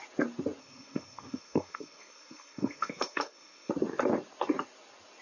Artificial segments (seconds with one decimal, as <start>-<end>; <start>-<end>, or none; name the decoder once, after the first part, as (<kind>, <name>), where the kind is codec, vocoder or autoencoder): 0.6-3.7 (codec, SNAC)